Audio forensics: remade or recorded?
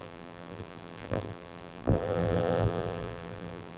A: remade